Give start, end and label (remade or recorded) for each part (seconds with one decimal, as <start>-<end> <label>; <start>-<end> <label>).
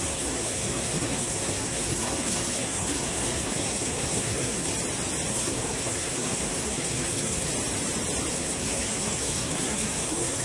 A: 0.0-4.7 remade; 4.7-5.3 recorded; 5.3-7.5 remade; 7.5-8.3 recorded; 8.3-10.4 remade